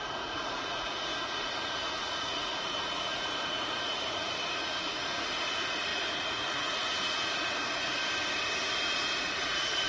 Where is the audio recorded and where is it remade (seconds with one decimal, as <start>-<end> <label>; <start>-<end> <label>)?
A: 0.0-8.0 remade; 8.0-8.6 recorded; 8.6-9.9 remade